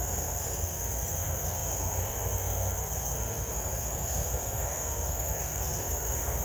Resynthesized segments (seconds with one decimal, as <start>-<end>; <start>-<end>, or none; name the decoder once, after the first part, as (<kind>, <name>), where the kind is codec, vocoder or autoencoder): 0.0-6.4 (codec, SNAC)